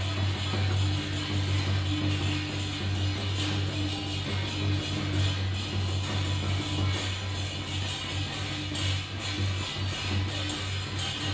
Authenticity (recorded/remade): recorded